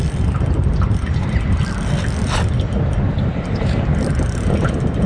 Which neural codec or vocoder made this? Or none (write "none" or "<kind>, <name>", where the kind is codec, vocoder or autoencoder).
none